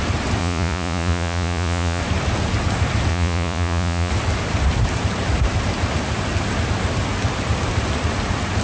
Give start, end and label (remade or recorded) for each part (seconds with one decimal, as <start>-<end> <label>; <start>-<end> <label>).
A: 0.0-0.4 recorded; 0.4-2.0 remade; 2.0-3.1 recorded; 3.1-4.1 remade; 4.1-8.6 recorded